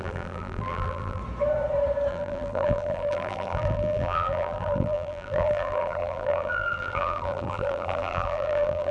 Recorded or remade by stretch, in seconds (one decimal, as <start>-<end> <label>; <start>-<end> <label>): 0.0-1.2 remade; 1.2-2.1 recorded; 2.1-8.9 remade